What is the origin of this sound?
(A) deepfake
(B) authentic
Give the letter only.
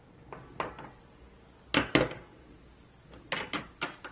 B